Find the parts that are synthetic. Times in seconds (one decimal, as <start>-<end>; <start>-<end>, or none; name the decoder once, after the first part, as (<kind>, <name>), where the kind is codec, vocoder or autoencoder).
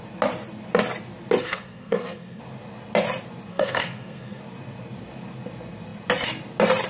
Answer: 1.4-2.4 (codec, SNAC); 3.5-4.4